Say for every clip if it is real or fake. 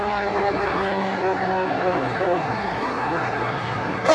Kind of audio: fake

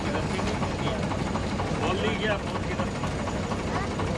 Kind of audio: real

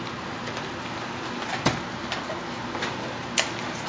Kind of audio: real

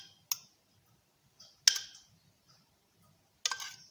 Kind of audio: real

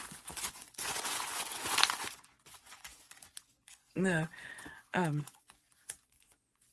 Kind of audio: fake